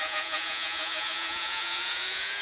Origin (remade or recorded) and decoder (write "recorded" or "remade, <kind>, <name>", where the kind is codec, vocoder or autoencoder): remade, vocoder, Vocos